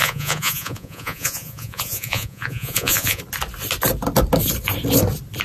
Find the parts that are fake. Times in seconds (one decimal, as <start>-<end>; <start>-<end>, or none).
0.0-3.2